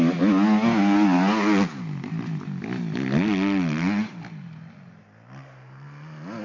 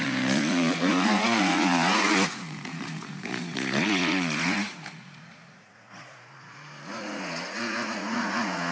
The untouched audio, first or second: first